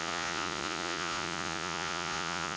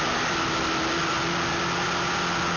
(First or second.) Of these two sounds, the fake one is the first